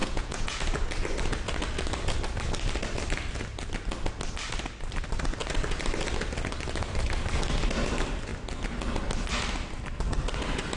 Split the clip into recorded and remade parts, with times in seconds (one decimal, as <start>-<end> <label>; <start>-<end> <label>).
0.0-0.6 remade; 0.6-10.8 recorded